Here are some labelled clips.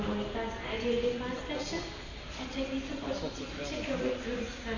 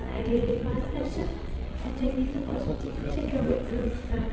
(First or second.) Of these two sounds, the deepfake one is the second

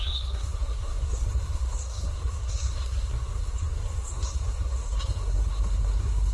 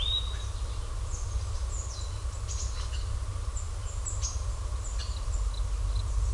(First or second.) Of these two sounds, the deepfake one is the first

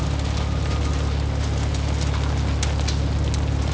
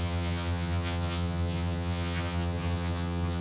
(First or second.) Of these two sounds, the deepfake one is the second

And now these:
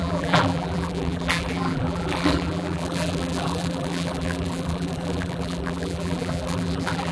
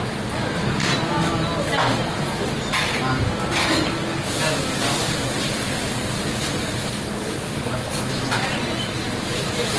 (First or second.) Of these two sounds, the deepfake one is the first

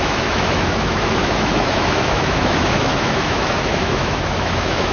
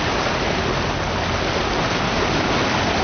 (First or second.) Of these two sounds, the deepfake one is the first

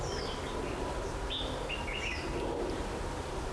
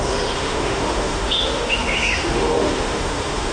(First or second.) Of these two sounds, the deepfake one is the second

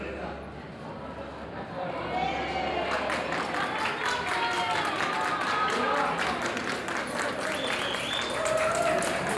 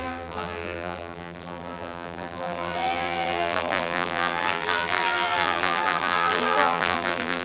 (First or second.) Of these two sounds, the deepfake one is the second